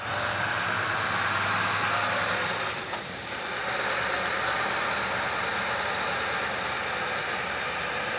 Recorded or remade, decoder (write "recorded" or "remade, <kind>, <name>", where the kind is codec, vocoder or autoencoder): recorded